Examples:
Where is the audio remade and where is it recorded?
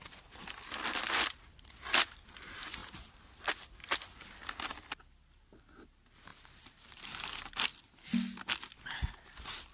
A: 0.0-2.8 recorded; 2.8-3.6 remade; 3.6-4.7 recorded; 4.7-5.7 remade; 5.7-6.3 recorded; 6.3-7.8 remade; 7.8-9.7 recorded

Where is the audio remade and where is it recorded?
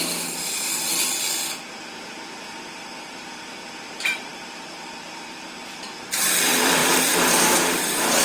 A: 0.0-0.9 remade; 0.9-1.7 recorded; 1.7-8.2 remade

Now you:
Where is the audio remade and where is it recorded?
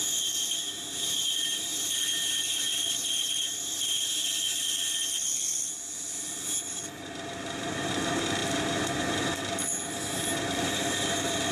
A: 0.0-4.2 remade; 4.2-6.8 recorded; 6.8-11.5 remade